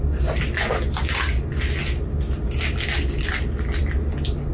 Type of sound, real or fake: real